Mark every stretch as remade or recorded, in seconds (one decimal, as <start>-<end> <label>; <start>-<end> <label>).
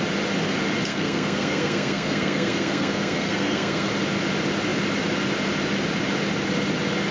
0.0-0.9 recorded; 0.9-3.9 remade; 3.9-7.1 recorded